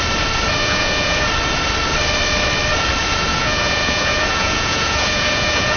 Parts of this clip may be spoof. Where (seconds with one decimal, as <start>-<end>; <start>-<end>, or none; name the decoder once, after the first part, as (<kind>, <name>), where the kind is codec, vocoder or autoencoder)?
0.6-1.2 (vocoder, Vocos); 3.3-5.8